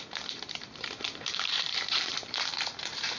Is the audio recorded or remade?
remade